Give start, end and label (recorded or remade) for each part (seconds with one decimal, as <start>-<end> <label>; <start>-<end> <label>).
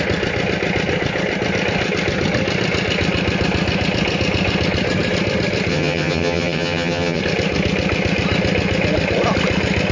0.0-5.7 recorded; 5.7-7.2 remade; 7.2-9.9 recorded